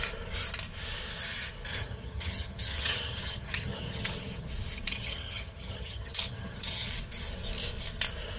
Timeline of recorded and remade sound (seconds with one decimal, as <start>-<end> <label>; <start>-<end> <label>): 0.0-1.7 recorded; 1.7-4.5 remade; 4.5-4.9 recorded; 4.9-6.9 remade; 6.9-8.4 recorded